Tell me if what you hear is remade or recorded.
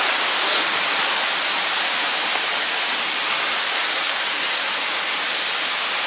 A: recorded